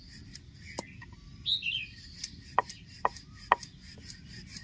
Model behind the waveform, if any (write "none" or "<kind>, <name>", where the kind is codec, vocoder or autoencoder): none